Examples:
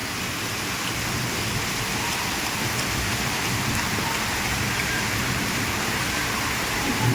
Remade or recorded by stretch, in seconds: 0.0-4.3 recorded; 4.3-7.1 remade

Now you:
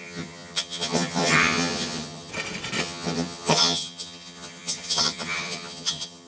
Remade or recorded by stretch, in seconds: 0.0-2.3 remade; 2.3-2.8 recorded; 2.8-6.3 remade